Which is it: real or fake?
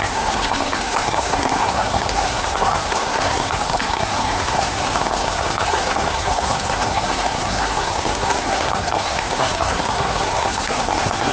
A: fake